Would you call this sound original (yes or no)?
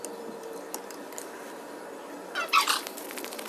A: yes